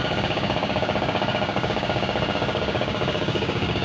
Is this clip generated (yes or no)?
yes